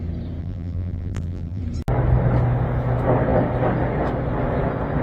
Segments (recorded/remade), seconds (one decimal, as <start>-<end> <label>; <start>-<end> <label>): 0.0-0.4 recorded; 0.4-1.6 remade; 1.6-5.0 recorded